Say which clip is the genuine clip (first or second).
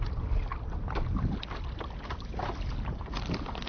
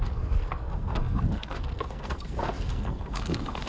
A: first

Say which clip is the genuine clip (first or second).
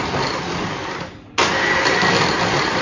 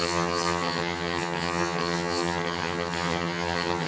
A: first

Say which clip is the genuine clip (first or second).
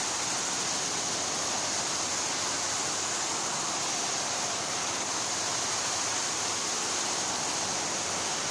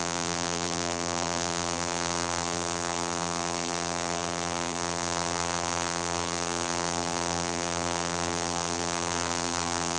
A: first